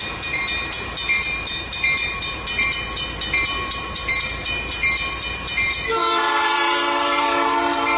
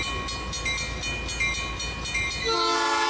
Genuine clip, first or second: second